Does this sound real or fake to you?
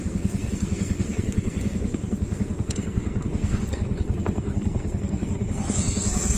fake